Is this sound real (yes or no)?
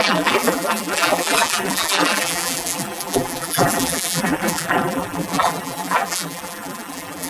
no